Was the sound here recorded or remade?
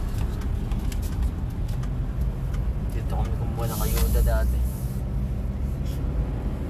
recorded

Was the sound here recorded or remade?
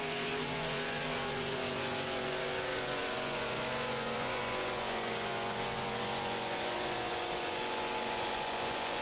remade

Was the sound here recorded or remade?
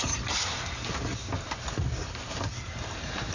recorded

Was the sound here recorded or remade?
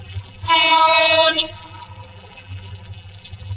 remade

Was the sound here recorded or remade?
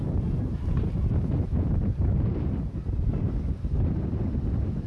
remade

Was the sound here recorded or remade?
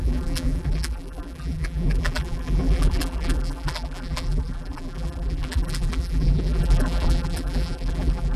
remade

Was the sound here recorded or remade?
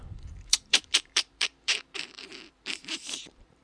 remade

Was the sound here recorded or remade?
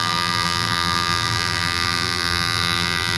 remade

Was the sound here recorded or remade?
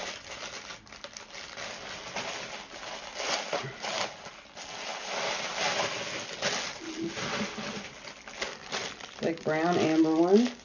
recorded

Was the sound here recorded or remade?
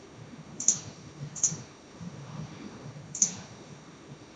remade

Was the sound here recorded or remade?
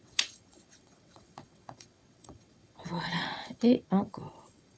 remade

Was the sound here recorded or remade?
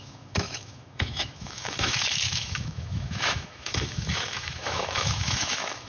remade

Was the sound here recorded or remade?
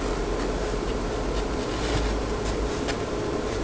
recorded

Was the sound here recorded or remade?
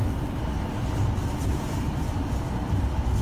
recorded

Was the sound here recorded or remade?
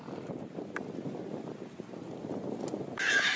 recorded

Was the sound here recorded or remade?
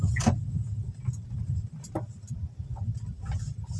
recorded